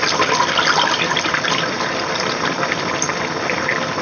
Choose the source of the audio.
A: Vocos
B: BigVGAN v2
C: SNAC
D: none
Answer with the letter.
D